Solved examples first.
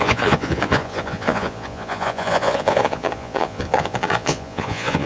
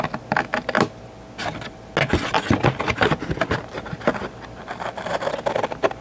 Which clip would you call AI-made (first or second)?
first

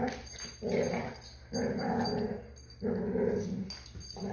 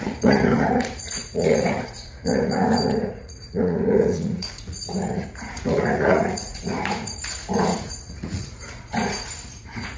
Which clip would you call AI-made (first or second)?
second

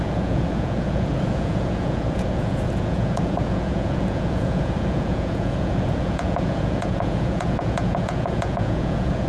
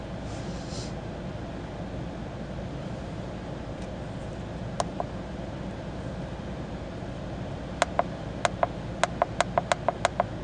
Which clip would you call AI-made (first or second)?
first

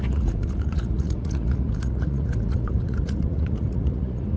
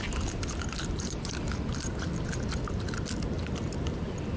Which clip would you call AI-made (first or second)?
first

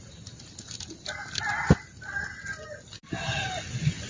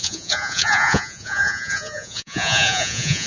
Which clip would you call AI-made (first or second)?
second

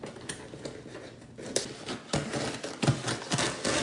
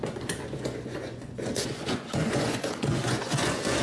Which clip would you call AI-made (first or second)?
second